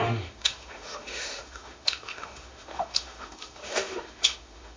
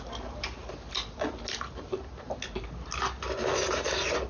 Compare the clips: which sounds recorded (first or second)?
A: second